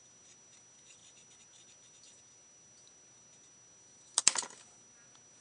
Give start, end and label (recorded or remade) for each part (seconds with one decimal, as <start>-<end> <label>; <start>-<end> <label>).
0.0-5.4 recorded